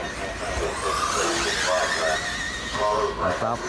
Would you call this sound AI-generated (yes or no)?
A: no